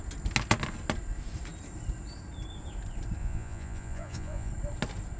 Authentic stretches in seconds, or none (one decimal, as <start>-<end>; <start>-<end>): 0.0-3.2; 4.5-5.2